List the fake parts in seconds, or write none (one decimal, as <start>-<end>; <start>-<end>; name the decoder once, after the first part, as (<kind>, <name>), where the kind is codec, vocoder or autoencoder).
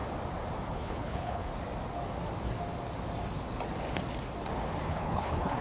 0.7-1.5 (codec, HILCodec); 4.9-5.6